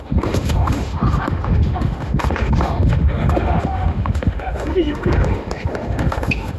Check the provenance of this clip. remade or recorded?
remade